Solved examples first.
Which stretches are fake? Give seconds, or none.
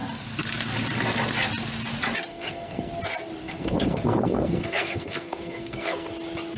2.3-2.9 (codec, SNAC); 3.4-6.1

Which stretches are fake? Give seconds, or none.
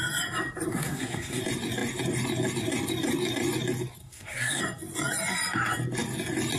0.7-1.4 (codec, SNAC); 4.0-4.6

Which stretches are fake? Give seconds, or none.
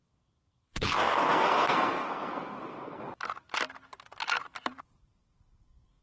0.0-3.0 (codec, SNAC); 5.0-6.0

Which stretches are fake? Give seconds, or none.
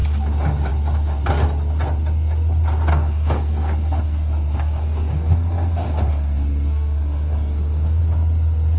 2.9-8.0 (codec, SNAC)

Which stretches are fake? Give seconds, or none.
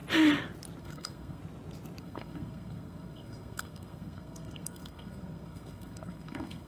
0.8-1.4 (codec, SNAC); 2.0-6.7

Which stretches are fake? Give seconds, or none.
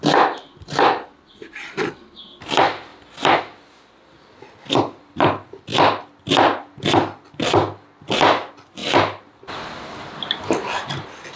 none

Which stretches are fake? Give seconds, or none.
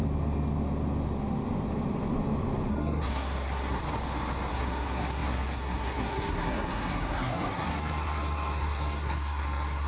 2.7-3.8 (codec, SNAC); 4.5-9.9